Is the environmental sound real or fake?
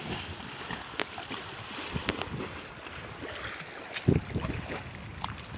real